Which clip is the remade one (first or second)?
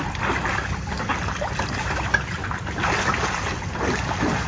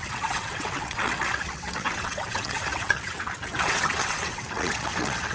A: second